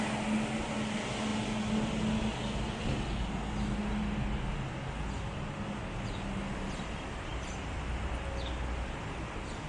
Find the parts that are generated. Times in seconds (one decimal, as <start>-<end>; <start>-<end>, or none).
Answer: none